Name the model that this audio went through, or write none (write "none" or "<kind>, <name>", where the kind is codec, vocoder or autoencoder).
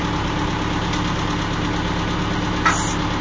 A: none